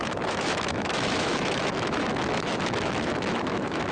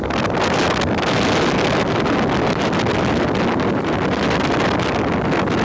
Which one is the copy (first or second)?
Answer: first